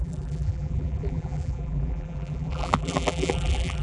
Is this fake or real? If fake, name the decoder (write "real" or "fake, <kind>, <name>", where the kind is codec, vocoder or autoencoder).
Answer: fake, vocoder, BigVGAN v2